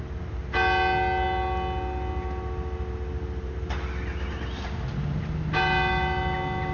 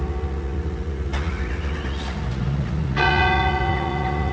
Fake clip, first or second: second